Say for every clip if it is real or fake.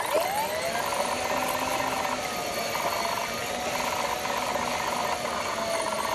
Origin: real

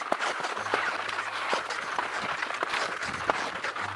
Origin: real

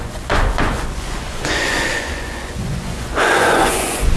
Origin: fake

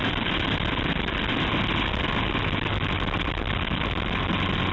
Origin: real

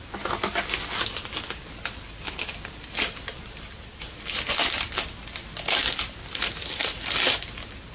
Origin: real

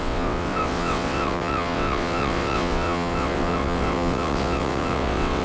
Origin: fake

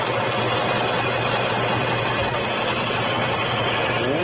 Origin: real